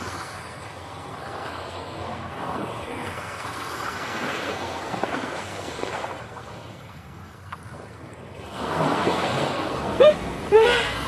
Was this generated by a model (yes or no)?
yes